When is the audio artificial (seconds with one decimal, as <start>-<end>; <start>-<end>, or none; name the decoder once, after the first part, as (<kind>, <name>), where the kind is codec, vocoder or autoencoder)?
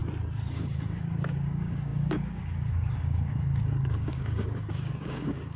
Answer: 0.5-5.6 (codec, DAC)